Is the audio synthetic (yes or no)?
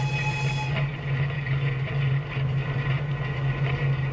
no